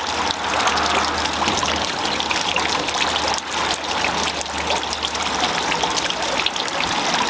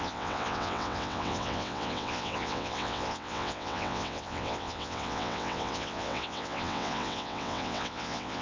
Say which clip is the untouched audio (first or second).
first